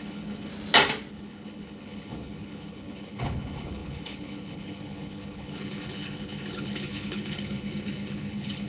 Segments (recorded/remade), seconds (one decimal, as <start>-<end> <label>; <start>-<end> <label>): 0.0-0.5 remade; 0.5-1.1 recorded; 1.1-8.7 remade